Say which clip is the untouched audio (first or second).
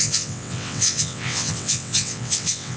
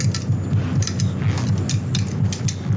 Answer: second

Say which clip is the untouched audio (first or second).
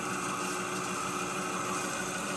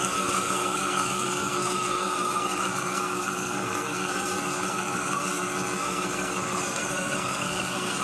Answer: first